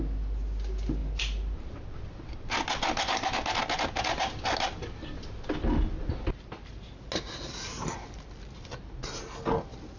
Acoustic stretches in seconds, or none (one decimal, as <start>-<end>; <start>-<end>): 0.0-10.0